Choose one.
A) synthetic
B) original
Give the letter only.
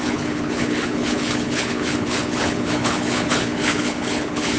A